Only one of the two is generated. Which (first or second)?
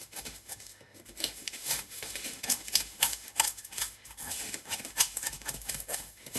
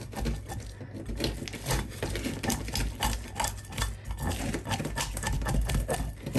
first